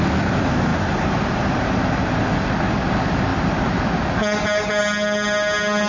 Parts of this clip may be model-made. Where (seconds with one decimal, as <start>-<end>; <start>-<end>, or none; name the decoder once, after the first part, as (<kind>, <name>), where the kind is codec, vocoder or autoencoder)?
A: none